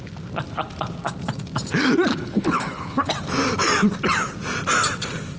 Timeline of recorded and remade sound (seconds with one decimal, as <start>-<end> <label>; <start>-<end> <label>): 0.0-2.1 recorded; 2.1-3.1 remade; 3.1-5.4 recorded